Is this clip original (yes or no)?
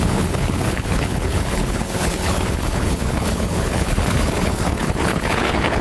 no